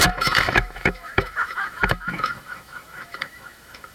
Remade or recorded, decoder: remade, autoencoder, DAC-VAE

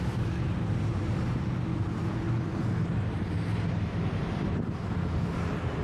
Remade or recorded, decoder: recorded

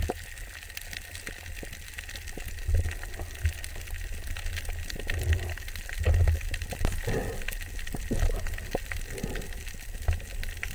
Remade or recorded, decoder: recorded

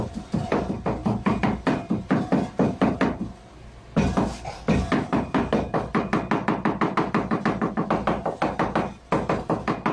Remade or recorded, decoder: recorded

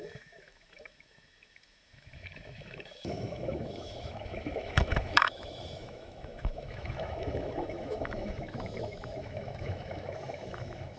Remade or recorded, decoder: remade, autoencoder, DAC-VAE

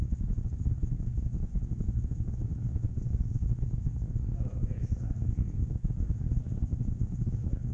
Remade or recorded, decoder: remade, autoencoder, DAC-VAE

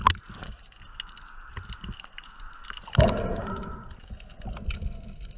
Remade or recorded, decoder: recorded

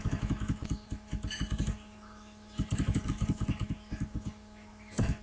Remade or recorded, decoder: remade, autoencoder, DAC-VAE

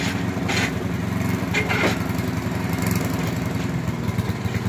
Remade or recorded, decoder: recorded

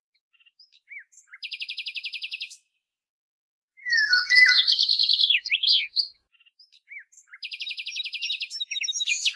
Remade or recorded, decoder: remade, autoencoder, DAC-VAE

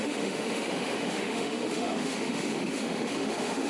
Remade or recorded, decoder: remade, autoencoder, DAC-VAE